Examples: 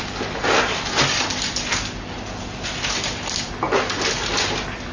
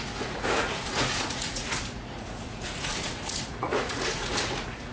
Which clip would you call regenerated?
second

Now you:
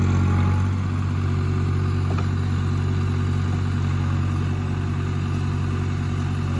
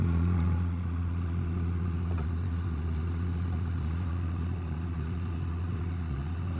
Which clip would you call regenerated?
second